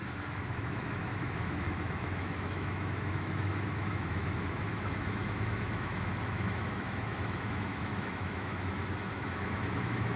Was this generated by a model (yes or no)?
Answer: yes